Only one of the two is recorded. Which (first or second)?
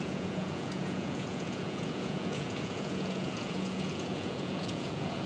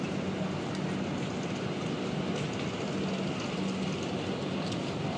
second